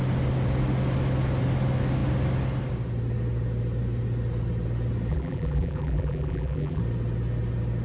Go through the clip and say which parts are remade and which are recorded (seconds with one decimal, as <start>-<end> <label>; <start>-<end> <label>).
0.0-5.1 recorded; 5.1-6.8 remade; 6.8-7.8 recorded